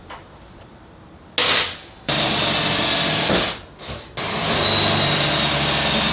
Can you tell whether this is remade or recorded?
recorded